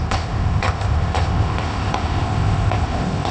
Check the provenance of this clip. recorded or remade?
remade